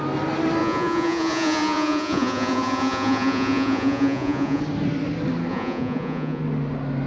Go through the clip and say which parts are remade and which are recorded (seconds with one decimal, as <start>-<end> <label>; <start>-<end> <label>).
0.0-0.6 recorded; 0.6-4.6 remade; 4.6-5.5 recorded; 5.5-6.4 remade; 6.4-7.1 recorded